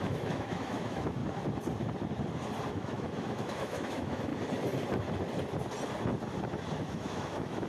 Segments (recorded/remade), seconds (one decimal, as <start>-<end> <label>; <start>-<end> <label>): 0.0-1.2 remade; 1.2-2.7 recorded; 2.7-4.3 remade; 4.3-6.8 recorded; 6.8-7.7 remade